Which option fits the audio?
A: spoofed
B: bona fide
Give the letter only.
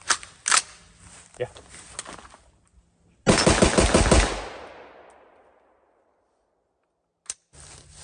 B